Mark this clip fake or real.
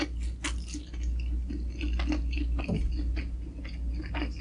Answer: real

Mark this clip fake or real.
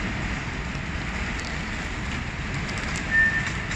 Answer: real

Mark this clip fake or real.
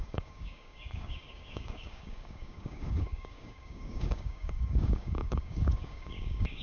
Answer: fake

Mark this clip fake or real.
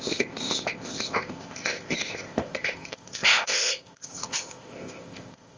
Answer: fake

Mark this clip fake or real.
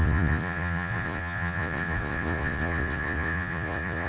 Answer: fake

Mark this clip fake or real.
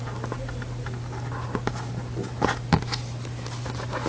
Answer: real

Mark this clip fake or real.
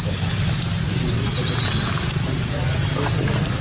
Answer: real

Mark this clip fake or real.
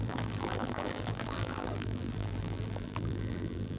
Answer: fake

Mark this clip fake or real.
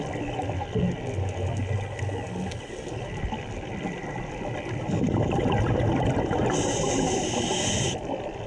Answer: real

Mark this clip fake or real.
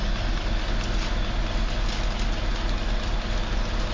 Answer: real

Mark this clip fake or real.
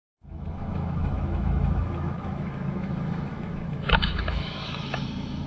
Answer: fake